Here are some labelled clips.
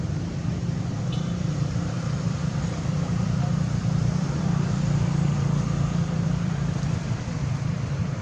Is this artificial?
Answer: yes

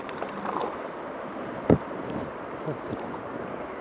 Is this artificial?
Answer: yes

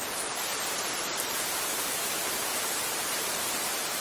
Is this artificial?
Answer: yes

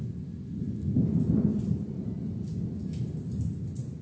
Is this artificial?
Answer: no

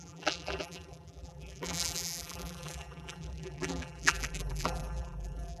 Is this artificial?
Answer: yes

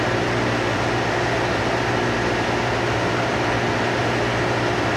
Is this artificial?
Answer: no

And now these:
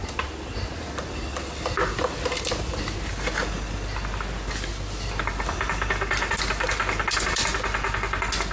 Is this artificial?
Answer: no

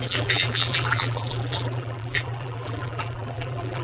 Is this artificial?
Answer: yes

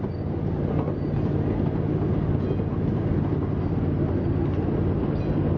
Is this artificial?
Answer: no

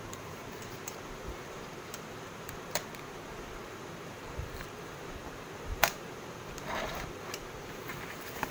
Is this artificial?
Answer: yes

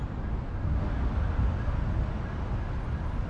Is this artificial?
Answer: no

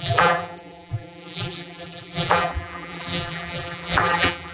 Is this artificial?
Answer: yes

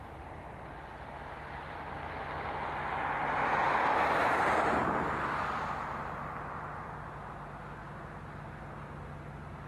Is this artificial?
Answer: no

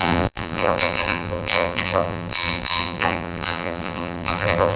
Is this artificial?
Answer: yes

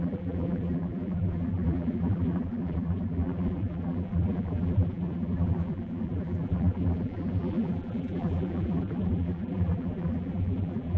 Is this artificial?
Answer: yes